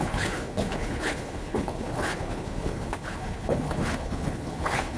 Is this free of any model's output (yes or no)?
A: no